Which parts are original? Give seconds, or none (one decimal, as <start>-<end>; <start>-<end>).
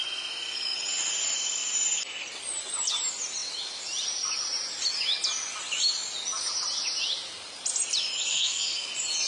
0.0-8.3; 8.9-9.3